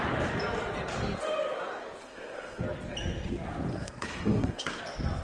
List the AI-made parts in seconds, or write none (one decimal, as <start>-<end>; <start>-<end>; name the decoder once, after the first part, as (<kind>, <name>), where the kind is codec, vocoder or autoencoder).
2.0-2.6 (codec, SNAC); 3.7-4.8